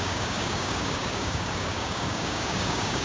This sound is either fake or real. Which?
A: fake